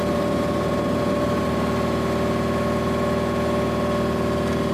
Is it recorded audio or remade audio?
recorded